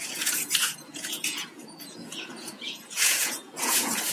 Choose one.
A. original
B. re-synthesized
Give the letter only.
B